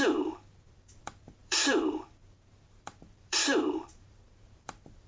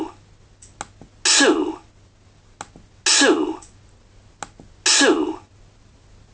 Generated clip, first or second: first